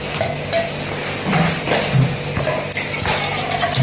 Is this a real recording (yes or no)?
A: yes